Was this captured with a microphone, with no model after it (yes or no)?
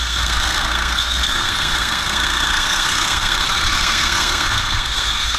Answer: no